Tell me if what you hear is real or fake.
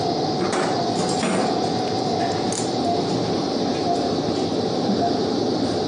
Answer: real